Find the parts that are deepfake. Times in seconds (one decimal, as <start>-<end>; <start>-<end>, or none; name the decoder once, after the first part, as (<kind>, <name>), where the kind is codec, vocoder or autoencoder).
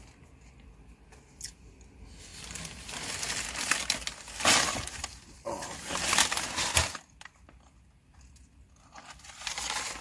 none